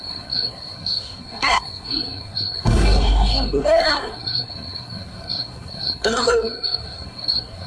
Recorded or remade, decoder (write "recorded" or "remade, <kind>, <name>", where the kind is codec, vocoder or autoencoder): remade, codec, SNAC